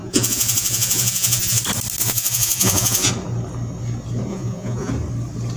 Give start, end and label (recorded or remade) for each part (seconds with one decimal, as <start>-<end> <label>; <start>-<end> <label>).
0.0-1.6 remade; 1.6-2.0 recorded; 2.0-3.1 remade; 3.1-4.3 recorded; 4.3-4.9 remade; 4.9-5.6 recorded